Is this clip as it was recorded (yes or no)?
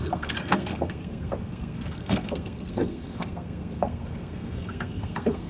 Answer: no